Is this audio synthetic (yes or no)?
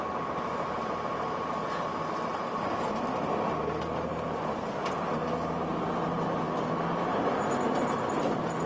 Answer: no